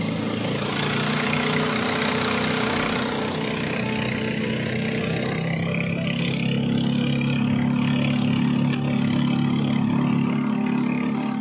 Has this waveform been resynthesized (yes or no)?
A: no